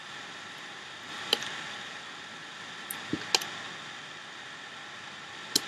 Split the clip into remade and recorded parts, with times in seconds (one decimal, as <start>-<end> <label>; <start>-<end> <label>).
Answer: 0.0-3.1 remade; 3.1-5.7 recorded